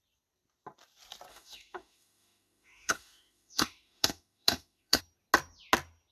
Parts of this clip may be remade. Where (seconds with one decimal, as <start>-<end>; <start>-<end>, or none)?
1.3-5.0